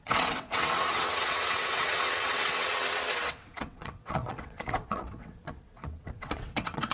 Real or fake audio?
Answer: fake